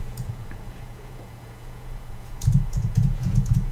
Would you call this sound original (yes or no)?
no